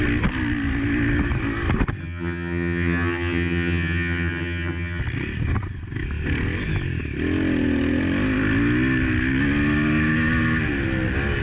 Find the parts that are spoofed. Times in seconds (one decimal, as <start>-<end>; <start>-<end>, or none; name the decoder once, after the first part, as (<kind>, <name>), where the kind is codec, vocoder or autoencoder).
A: 2.0-5.0 (vocoder, HiFi-GAN)